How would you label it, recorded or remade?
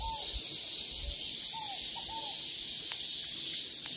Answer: recorded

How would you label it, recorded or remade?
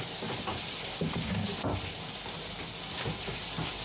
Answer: recorded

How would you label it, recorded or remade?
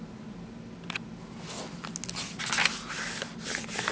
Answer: recorded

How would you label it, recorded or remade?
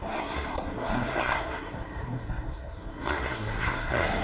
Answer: remade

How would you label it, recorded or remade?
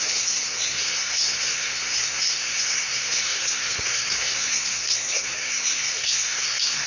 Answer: remade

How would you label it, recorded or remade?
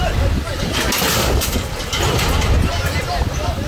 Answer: recorded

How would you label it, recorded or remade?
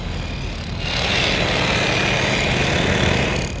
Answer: recorded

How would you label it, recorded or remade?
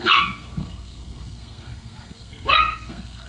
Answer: remade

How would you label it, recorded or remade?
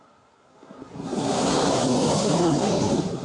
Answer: remade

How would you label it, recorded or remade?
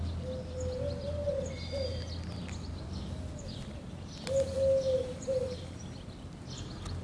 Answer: recorded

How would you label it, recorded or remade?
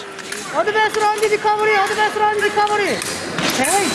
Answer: recorded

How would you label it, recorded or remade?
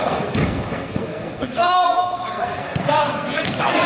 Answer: remade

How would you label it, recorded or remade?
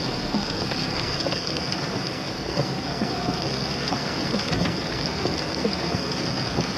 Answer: remade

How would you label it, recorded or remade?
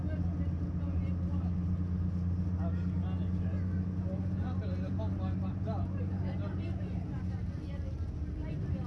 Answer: recorded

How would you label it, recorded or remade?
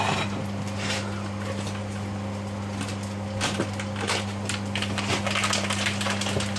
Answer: recorded